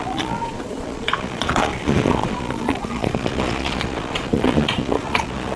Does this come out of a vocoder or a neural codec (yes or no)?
yes